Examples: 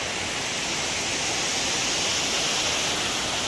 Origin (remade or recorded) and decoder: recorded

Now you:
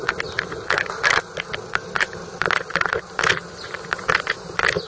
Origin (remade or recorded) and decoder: recorded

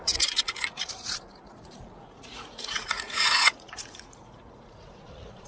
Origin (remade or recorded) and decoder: remade, vocoder, Vocos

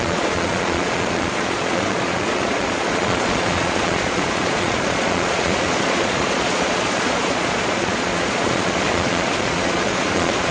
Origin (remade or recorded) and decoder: remade, vocoder, Vocos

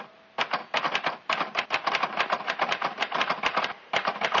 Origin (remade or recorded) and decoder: recorded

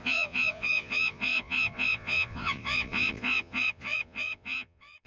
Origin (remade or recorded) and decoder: remade, vocoder, Vocos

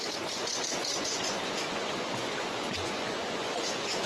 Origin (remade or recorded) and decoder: remade, vocoder, Vocos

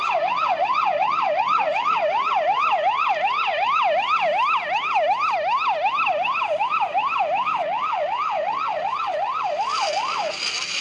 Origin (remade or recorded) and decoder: recorded